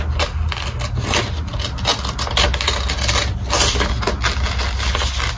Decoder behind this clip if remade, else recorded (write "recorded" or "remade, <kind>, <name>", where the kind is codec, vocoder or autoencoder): recorded